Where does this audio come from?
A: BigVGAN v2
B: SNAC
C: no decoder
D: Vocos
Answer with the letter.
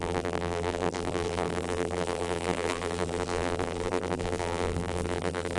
A